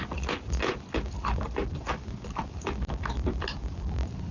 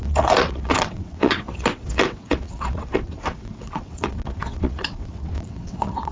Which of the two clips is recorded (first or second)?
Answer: first